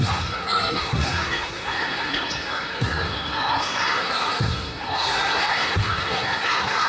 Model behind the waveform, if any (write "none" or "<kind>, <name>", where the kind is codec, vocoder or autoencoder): codec, SNAC